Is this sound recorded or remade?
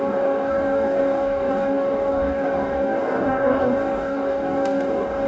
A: remade